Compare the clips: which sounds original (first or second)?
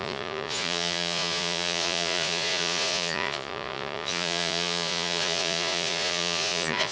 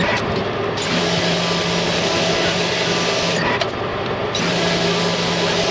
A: second